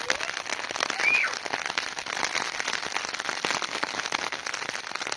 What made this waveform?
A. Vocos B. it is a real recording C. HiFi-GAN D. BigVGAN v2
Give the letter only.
B